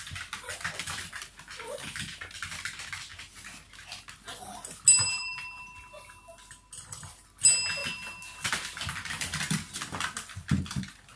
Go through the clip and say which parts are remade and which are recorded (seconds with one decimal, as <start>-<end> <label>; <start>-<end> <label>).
0.0-11.2 recorded